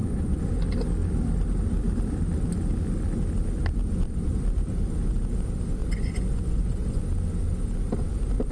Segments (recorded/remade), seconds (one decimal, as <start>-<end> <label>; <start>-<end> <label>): 0.0-0.5 remade; 0.5-5.8 recorded; 5.8-7.0 remade; 7.0-8.5 recorded